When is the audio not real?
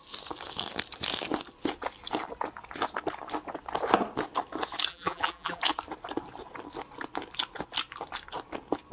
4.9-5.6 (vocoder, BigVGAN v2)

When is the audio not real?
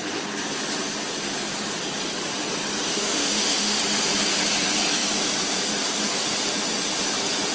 2.9-3.8 (autoencoder, DAC-VAE)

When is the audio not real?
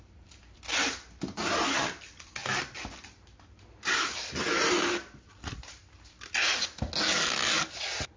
none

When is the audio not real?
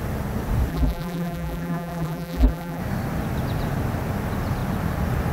0.7-2.8 (vocoder, BigVGAN v2)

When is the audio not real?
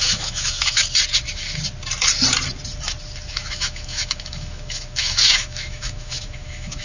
0.0-0.8 (autoencoder, DAC-VAE); 3.3-6.8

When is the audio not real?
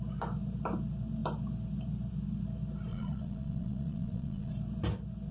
2.9-4.5 (vocoder, Vocos)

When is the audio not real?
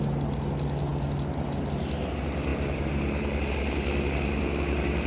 none